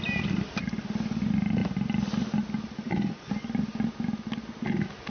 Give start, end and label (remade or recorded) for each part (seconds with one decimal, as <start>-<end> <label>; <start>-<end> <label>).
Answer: 0.0-5.1 recorded